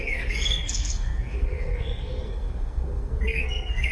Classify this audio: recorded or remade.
remade